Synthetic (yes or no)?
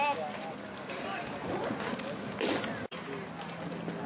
no